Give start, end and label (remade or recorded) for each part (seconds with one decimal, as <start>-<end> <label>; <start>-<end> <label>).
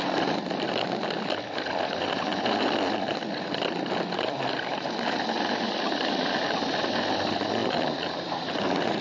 0.0-7.6 recorded; 7.6-8.6 remade; 8.6-9.0 recorded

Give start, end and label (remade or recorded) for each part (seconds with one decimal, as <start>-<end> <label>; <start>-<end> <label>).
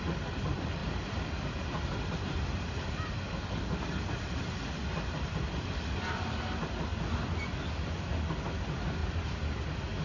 0.0-0.8 recorded; 0.8-3.1 remade; 3.1-9.0 recorded; 9.0-9.6 remade; 9.6-10.0 recorded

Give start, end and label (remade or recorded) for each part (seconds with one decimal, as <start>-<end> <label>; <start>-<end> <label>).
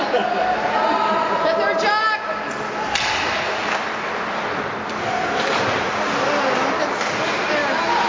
0.0-3.6 recorded; 3.6-4.7 remade; 4.7-8.1 recorded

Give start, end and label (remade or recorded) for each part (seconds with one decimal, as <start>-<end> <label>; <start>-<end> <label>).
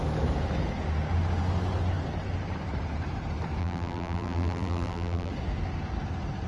0.0-3.6 recorded; 3.6-5.3 remade; 5.3-6.5 recorded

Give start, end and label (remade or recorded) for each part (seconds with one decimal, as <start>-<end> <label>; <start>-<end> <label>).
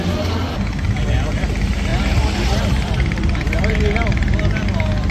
0.0-1.9 recorded; 1.9-5.1 remade